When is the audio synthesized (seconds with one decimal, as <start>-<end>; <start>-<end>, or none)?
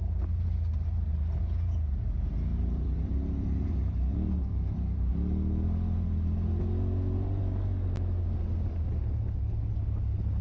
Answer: 2.5-5.1